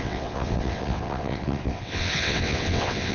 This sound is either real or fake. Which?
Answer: fake